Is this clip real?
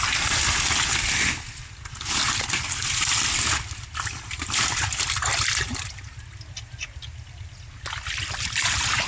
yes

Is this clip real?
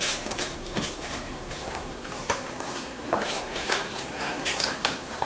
no